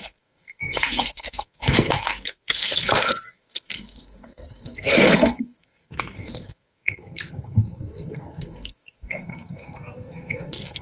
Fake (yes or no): yes